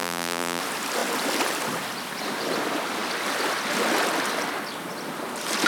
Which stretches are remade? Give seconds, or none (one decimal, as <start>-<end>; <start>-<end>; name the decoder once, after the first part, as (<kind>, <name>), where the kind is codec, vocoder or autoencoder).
0.0-0.6 (vocoder, BigVGAN v2)